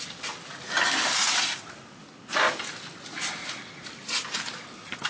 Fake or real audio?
real